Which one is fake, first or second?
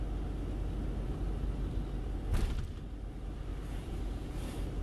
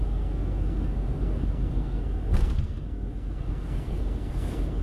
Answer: second